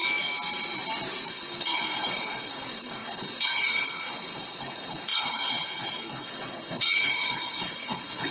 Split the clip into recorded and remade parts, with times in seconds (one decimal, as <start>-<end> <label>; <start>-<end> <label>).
0.0-1.3 recorded; 1.3-8.3 remade